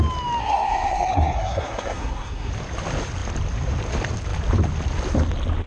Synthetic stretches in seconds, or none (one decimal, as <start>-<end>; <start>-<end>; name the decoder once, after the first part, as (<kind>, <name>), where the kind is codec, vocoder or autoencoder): 0.4-2.5 (codec, SNAC)